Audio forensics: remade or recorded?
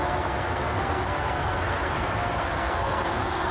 remade